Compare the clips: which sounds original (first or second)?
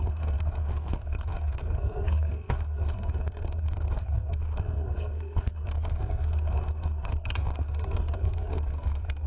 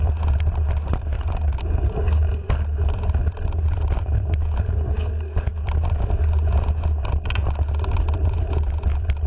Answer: second